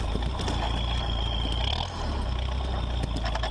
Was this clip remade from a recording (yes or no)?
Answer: no